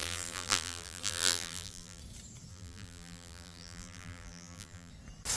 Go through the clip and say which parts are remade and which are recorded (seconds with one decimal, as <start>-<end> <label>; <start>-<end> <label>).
0.0-2.0 remade; 2.0-2.5 recorded; 2.5-4.9 remade; 4.9-5.4 recorded